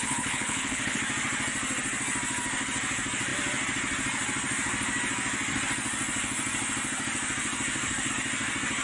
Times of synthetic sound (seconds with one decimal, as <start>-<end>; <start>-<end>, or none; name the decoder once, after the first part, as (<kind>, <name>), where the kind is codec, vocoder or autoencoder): 0.0-1.0 (codec, HILCodec)